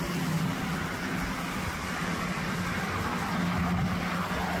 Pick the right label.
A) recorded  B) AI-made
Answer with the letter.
A